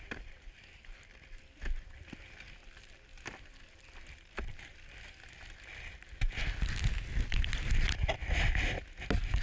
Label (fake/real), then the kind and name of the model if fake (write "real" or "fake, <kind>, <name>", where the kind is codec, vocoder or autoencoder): real